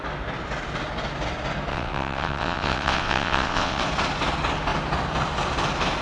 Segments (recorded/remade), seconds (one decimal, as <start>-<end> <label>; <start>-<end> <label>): 0.0-1.7 recorded; 1.7-3.8 remade; 3.8-6.0 recorded